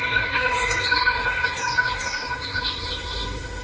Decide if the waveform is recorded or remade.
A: remade